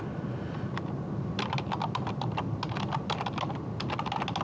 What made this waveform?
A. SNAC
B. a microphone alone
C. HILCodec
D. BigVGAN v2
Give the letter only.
B